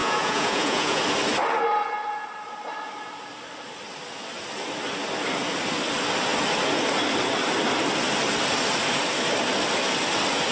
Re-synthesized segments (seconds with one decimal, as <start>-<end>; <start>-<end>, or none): 0.0-1.0